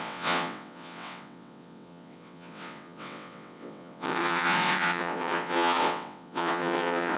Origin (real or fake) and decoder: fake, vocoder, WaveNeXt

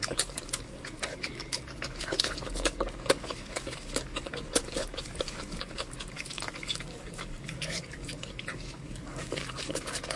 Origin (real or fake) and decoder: fake, codec, DAC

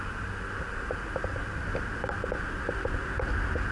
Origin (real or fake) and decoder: real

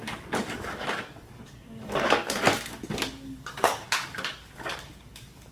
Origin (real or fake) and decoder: fake, codec, DAC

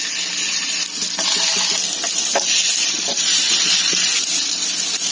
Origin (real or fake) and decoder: real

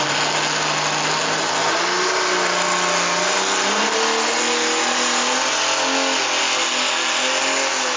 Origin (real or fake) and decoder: real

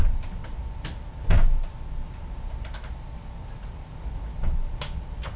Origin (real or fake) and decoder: real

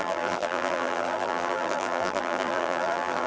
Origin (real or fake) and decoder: fake, vocoder, BigVGAN v2